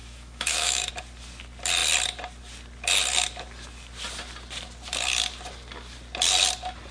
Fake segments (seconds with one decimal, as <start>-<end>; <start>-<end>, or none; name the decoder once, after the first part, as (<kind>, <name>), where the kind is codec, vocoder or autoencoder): 0.0-0.9 (autoencoder, DAC-VAE)